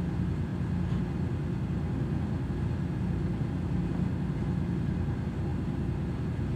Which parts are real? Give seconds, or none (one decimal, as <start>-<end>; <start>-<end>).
0.0-6.6